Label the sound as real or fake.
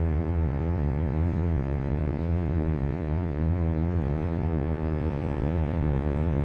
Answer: fake